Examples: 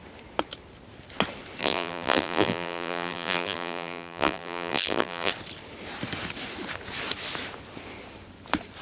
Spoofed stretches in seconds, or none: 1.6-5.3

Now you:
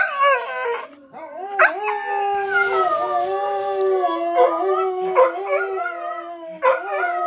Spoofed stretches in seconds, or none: 0.5-1.6

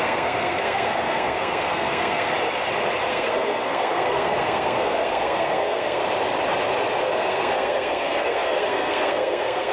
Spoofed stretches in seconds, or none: 0.0-2.3; 3.1-6.0; 7.0-9.7

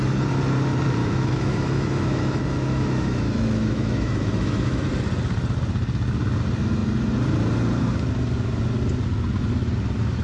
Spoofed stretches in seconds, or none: 1.0-4.9

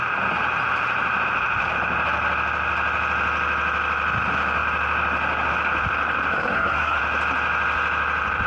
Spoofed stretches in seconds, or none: 6.3-7.0

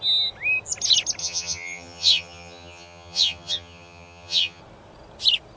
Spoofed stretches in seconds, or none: 1.2-4.6

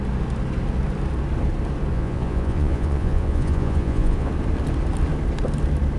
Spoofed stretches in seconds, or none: 1.9-4.3